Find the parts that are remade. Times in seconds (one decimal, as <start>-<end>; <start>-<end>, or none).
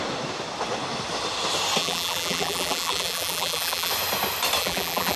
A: 1.8-3.9; 4.6-5.2